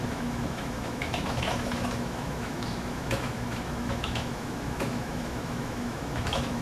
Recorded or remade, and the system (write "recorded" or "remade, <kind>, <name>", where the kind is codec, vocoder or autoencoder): remade, autoencoder, DAC-VAE